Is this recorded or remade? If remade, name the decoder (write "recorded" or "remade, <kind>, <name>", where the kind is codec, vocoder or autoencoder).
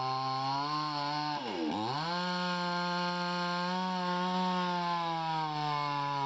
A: recorded